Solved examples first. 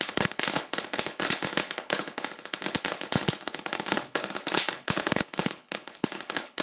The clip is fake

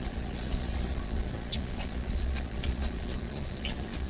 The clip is fake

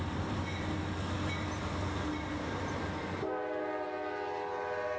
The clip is real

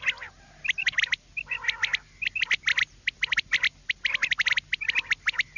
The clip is real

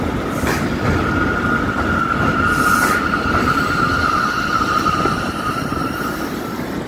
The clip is real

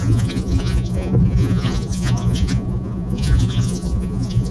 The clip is fake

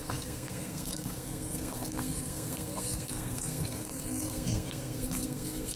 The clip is fake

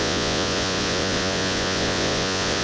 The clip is fake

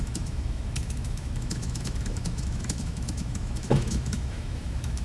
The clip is fake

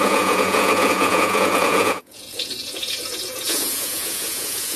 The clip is fake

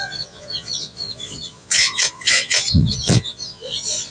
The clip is fake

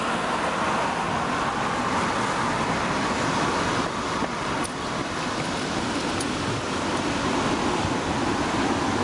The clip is real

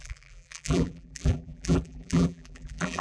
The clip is fake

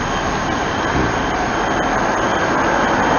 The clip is real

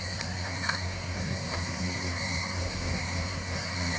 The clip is fake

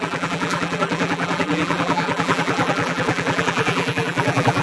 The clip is fake